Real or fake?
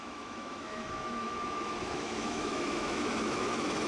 fake